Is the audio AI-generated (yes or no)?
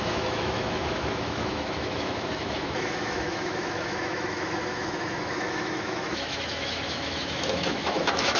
yes